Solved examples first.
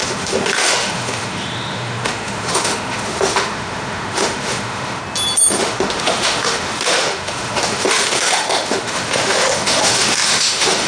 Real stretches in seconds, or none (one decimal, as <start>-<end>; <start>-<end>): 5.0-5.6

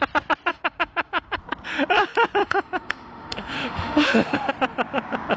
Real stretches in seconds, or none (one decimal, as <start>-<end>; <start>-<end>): 0.0-0.5; 1.4-2.4; 4.5-5.4

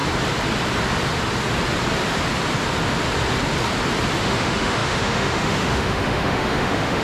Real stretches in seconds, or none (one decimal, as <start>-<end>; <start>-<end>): 0.0-4.2